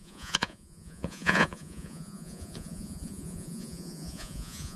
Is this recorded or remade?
remade